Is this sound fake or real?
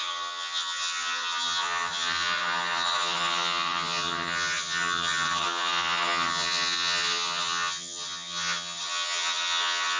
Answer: fake